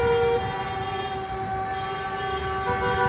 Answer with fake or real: real